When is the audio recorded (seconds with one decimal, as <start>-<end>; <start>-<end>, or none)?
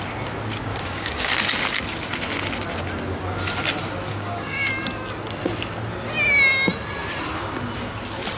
0.0-0.7; 1.3-4.1; 4.7-8.4